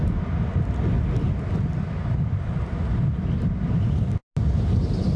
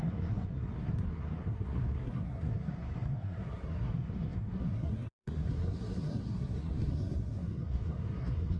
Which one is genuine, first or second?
first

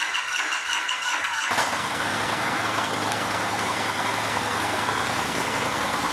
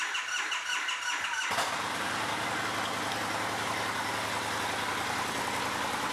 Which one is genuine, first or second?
second